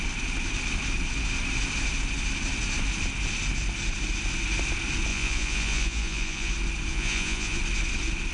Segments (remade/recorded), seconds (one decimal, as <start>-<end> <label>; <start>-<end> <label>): 0.0-5.1 recorded; 5.1-6.5 remade; 6.5-6.9 recorded; 6.9-7.6 remade; 7.6-8.3 recorded